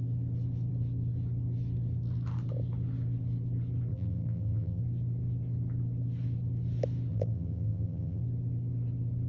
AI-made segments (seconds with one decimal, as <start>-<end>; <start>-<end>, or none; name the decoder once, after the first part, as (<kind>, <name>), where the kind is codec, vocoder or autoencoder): 3.9-4.8 (vocoder, BigVGAN v2); 7.1-8.2